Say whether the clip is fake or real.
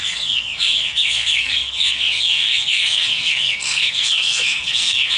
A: fake